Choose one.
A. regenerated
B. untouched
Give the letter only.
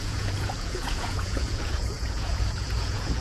A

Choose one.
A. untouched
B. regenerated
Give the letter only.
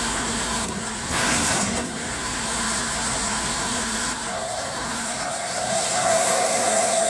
B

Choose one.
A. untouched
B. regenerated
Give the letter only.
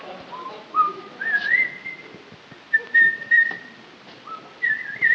A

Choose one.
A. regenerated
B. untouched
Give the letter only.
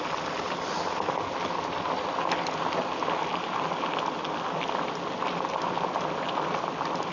B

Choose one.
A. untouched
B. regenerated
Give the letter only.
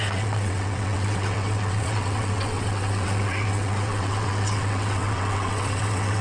B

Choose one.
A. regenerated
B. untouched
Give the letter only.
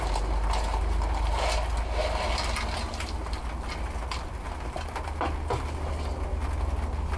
B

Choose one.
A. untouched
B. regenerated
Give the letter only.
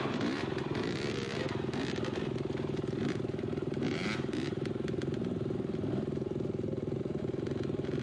A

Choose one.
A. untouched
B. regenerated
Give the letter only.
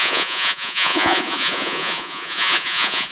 B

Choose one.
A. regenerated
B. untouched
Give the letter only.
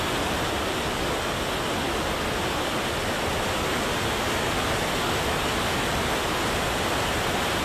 B